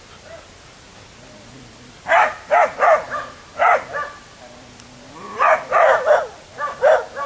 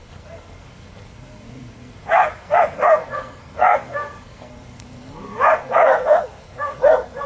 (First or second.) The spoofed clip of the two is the second